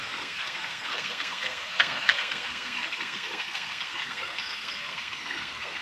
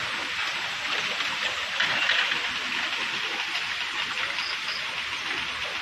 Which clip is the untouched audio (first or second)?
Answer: second